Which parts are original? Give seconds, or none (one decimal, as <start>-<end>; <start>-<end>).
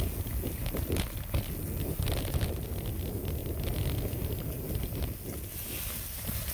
0.0-3.4; 4.3-6.5